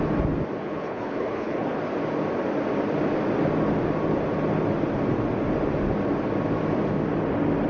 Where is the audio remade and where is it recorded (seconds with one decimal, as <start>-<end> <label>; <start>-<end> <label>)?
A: 0.0-0.6 recorded; 0.6-1.8 remade; 1.8-7.7 recorded